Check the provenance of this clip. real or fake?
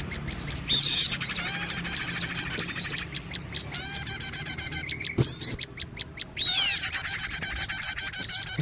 real